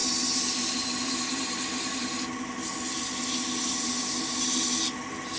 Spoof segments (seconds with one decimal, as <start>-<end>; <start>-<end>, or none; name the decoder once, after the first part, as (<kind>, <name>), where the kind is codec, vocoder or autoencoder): none